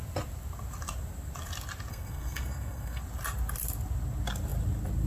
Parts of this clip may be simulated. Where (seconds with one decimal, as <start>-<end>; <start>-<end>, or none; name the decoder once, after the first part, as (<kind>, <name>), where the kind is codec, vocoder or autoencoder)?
1.9-3.0 (codec, SNAC)